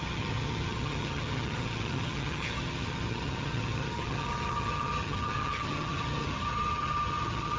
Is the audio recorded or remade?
remade